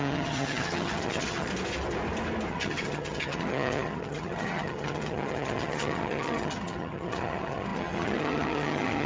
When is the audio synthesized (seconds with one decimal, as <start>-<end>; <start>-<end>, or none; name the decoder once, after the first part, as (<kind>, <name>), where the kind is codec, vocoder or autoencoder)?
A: 0.0-1.5 (vocoder, HiFi-GAN); 2.5-9.1